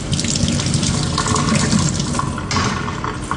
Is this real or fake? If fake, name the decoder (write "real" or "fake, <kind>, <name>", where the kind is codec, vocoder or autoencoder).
real